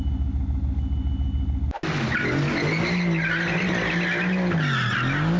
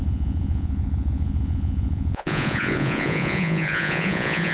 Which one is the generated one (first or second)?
second